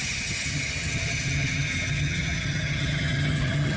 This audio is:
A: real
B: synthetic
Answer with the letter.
B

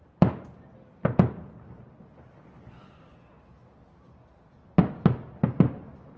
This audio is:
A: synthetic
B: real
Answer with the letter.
B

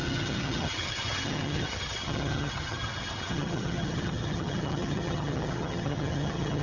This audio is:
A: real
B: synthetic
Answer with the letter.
B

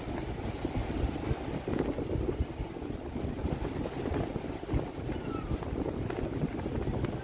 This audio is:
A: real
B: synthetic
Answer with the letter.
A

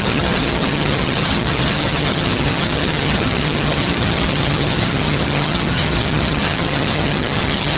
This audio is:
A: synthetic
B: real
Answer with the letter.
A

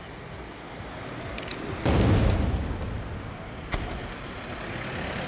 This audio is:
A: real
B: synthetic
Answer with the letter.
A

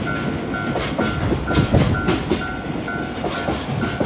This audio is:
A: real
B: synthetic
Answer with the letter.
A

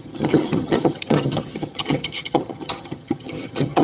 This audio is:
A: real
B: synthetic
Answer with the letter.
B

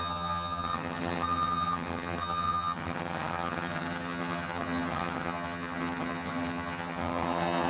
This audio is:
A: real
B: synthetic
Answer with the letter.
B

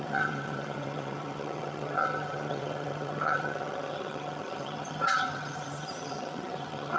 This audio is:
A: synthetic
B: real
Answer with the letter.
A